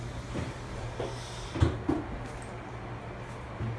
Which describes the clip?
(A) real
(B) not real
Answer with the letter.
A